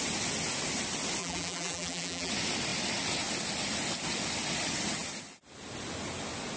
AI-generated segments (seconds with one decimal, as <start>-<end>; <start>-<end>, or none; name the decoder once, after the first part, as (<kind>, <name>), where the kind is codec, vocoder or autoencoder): 1.2-2.3 (vocoder, BigVGAN v2)